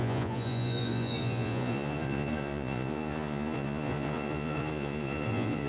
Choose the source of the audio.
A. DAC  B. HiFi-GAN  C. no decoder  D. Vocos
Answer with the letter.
D